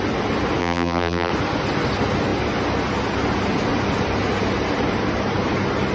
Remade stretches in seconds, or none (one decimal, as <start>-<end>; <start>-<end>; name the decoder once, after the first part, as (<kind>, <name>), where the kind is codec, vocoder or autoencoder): 0.6-1.3 (vocoder, BigVGAN v2)